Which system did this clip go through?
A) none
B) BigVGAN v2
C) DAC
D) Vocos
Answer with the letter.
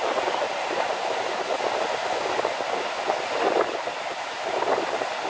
A